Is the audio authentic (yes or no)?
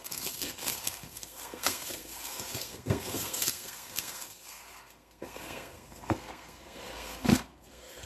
no